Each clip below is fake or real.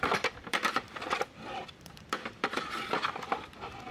fake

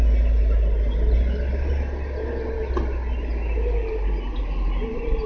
real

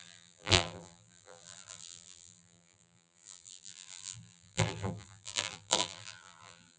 fake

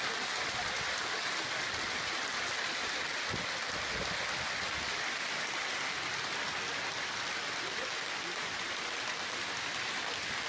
real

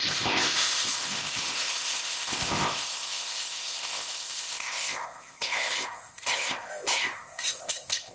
fake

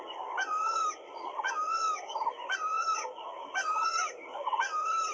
fake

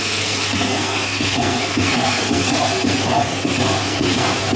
fake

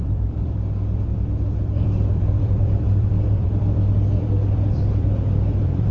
fake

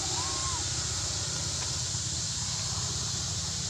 real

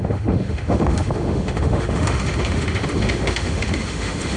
fake